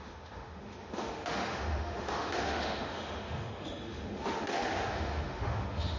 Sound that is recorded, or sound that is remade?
remade